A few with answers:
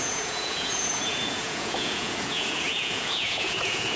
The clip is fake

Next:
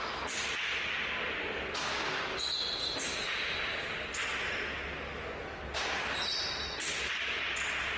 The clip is real